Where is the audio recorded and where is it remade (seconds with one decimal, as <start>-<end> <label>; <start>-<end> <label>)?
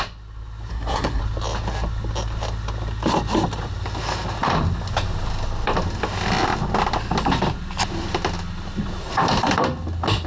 0.0-0.7 recorded; 0.7-1.2 remade; 1.2-10.3 recorded